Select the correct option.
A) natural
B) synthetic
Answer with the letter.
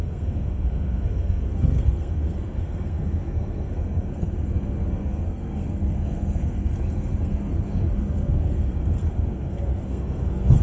B